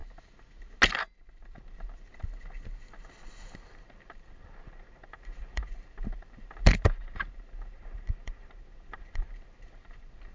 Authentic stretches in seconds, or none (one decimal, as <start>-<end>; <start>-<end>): 0.0-1.3; 2.1-3.8